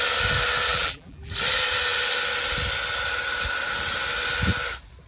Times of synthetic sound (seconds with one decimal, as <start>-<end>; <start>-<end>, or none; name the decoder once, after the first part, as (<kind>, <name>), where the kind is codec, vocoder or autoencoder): 0.7-1.3 (vocoder, BigVGAN v2)